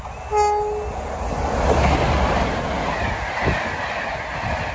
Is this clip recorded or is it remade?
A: recorded